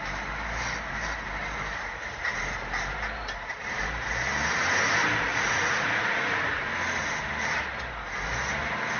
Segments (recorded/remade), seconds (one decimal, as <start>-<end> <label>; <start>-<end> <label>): 0.0-5.3 recorded; 5.3-6.7 remade; 6.7-9.0 recorded